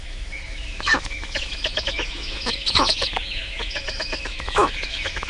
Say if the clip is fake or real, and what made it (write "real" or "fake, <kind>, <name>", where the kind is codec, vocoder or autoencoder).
fake, autoencoder, DAC-VAE